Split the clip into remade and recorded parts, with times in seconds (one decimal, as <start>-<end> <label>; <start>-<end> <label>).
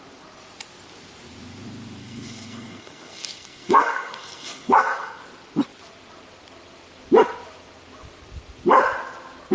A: 0.0-2.0 recorded; 2.0-5.2 remade; 5.2-9.5 recorded